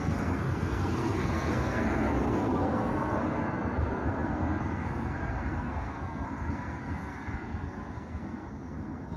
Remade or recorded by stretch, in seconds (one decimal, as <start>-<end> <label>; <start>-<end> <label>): 0.0-9.2 remade